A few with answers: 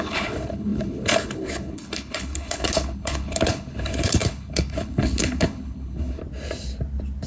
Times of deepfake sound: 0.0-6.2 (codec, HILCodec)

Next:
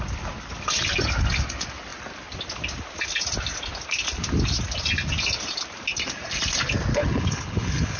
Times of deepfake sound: 6.9-8.0 (codec, HILCodec)